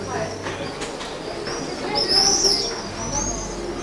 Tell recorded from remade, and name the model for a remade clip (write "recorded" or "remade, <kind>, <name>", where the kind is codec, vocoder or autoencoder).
recorded